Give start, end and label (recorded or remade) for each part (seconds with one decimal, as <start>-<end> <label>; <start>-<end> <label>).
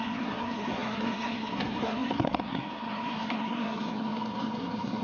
0.0-5.0 remade